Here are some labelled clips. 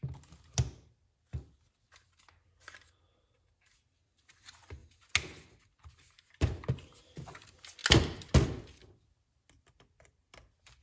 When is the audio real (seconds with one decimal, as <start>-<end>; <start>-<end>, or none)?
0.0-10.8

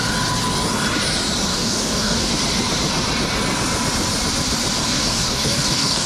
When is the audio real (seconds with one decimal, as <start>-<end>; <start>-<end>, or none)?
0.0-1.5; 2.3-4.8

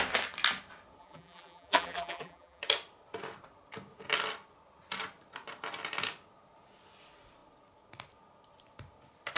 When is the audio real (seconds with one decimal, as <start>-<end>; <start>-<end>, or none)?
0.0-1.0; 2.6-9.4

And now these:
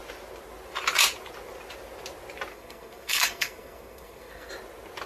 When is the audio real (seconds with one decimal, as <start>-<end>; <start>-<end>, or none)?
0.0-2.5; 4.5-5.1

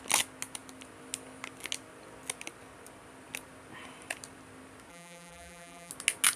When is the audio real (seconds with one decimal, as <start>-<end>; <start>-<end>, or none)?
0.0-4.9; 5.9-6.4

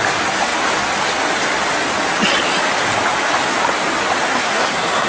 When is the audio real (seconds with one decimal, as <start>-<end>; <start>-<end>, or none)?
0.0-4.3